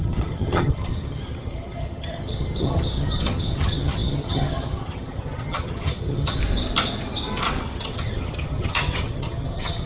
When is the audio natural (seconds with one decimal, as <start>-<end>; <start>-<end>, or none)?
6.4-7.6